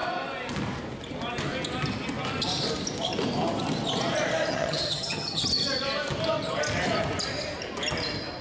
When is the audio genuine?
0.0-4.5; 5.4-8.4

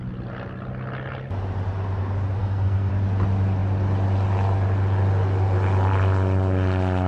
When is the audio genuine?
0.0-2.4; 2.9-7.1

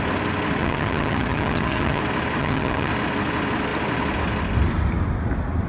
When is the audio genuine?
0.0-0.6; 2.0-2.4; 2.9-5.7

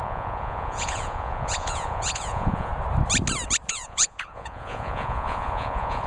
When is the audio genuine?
2.7-3.7

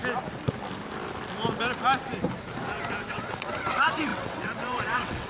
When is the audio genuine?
0.0-3.1

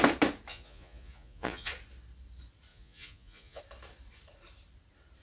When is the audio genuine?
0.0-0.5; 1.7-2.7; 3.6-5.2